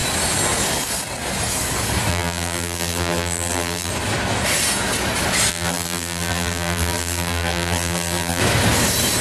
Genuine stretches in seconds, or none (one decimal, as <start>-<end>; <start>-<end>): 0.0-2.1; 3.9-5.5; 8.4-9.2